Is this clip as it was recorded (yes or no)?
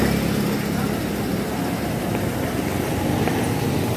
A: yes